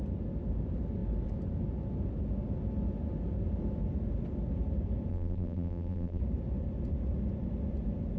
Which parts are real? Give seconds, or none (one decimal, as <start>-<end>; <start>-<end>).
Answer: 0.0-5.1; 6.2-8.2